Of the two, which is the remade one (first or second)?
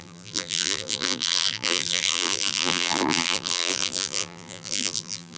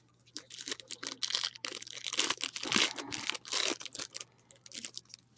first